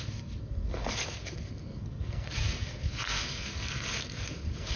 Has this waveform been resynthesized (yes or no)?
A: yes